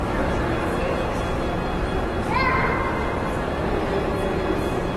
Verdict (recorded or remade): recorded